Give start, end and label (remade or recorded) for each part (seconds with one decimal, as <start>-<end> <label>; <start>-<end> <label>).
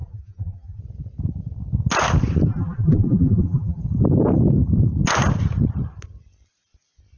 0.0-0.8 remade; 0.8-2.5 recorded; 2.5-3.8 remade; 3.8-7.2 recorded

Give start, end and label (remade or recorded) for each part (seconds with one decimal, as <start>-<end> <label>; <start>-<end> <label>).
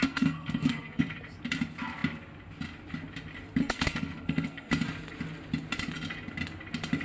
0.0-1.0 remade; 1.0-3.6 recorded; 3.6-4.7 remade; 4.7-7.0 recorded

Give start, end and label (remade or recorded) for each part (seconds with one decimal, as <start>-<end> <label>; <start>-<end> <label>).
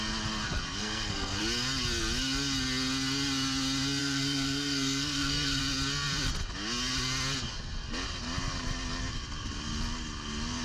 0.0-0.8 recorded; 0.8-1.4 remade; 1.4-4.0 recorded; 4.0-5.6 remade; 5.6-10.6 recorded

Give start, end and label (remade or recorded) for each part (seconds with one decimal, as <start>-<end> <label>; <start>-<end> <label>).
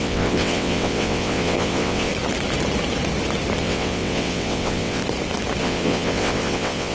0.0-2.1 remade; 2.1-3.6 recorded; 3.6-5.0 remade; 5.0-5.6 recorded; 5.6-6.9 remade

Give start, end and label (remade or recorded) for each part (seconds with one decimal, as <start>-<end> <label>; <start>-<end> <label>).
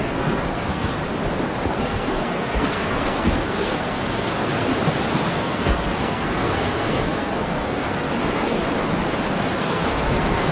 0.0-1.0 remade; 1.0-1.7 recorded; 1.7-4.7 remade; 4.7-5.3 recorded; 5.3-8.6 remade; 8.6-9.6 recorded; 9.6-10.5 remade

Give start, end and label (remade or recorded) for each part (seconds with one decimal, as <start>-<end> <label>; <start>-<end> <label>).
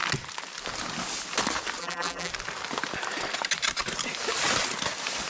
0.0-1.8 recorded; 1.8-2.3 remade; 2.3-5.3 recorded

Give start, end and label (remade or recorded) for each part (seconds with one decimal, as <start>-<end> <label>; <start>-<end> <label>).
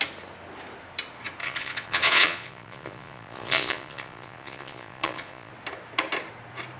0.0-1.4 recorded; 1.4-5.5 remade; 5.5-6.8 recorded